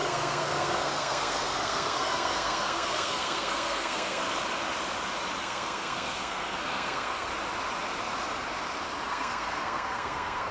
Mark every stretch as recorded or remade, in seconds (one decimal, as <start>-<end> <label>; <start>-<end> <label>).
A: 0.0-4.2 remade; 4.2-5.4 recorded; 5.4-7.3 remade; 7.3-9.1 recorded; 9.1-10.5 remade